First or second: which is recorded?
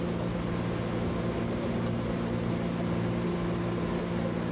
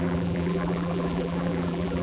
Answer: first